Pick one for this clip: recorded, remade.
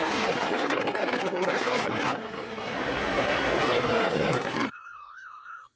remade